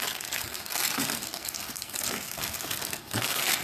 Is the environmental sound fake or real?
fake